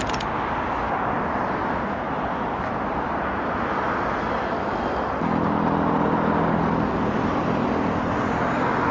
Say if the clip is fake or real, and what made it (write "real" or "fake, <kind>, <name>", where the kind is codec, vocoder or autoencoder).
real